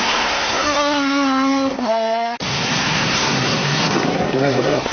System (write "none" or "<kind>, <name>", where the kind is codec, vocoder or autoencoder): codec, SNAC